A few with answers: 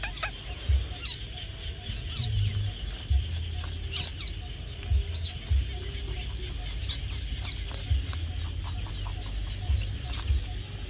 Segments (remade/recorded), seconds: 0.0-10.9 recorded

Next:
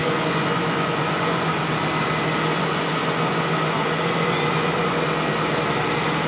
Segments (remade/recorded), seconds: 0.0-1.7 remade; 1.7-2.5 recorded; 2.5-5.0 remade; 5.0-6.3 recorded

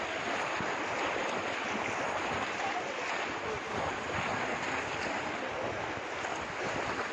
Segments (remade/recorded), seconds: 0.0-7.1 recorded

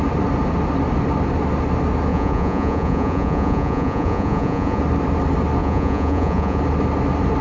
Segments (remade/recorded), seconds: 0.0-2.1 recorded; 2.1-4.8 remade; 4.8-5.6 recorded; 5.6-6.6 remade; 6.6-7.4 recorded

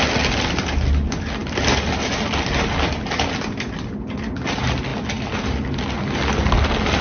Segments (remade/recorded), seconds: 0.0-7.0 recorded